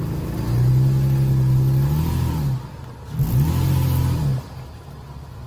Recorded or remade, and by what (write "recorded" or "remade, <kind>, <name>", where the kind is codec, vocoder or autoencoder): recorded